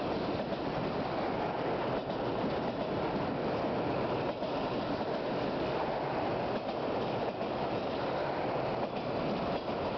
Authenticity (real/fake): real